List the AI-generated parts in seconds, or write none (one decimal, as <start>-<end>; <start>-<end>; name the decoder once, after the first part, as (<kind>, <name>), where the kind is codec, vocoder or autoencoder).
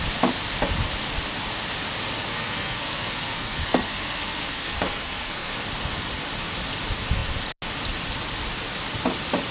2.3-5.6 (codec, SNAC)